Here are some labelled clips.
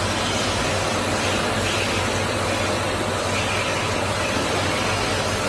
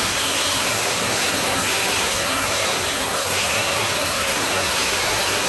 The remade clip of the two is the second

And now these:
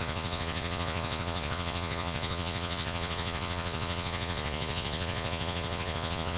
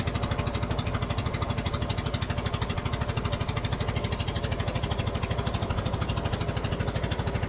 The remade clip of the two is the first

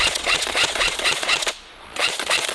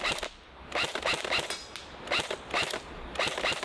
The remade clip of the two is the first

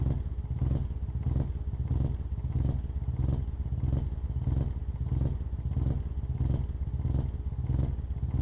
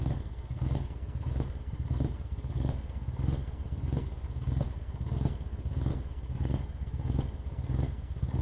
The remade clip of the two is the second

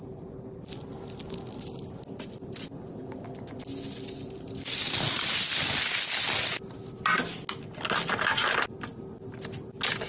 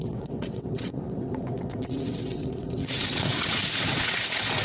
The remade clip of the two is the second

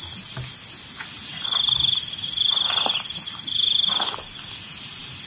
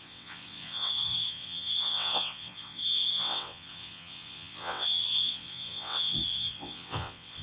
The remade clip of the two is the second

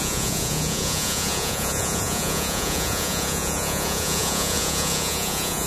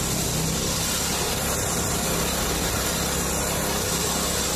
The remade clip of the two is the first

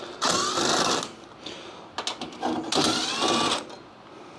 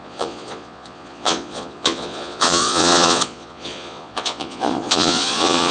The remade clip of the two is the second